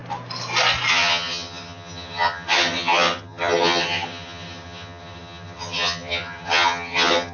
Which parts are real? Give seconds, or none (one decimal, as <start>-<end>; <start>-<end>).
0.0-0.9